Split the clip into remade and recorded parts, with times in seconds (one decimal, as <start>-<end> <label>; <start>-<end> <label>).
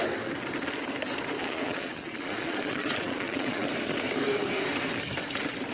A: 0.0-1.4 recorded; 1.4-3.7 remade; 3.7-5.7 recorded